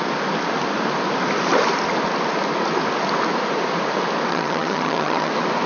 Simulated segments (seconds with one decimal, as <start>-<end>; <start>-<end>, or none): 4.3-5.3